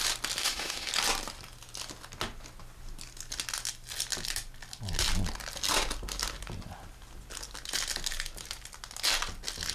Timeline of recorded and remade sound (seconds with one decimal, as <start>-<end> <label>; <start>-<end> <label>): 0.0-0.4 recorded; 0.4-0.9 remade; 0.9-9.7 recorded